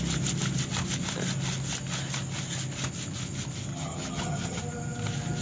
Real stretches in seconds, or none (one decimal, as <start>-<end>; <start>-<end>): 0.0-3.7; 4.6-5.4

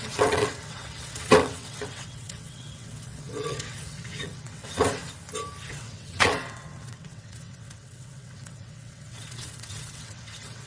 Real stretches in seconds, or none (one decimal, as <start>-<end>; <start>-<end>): 5.0-5.7

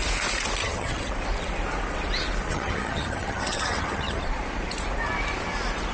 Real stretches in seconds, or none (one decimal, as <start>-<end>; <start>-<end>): 0.0-0.6; 1.1-2.5; 4.2-5.9

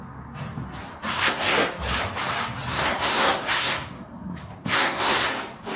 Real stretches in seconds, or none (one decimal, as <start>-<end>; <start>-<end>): 0.0-0.9; 1.7-2.7; 5.3-5.8